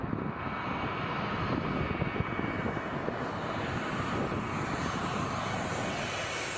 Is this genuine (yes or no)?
yes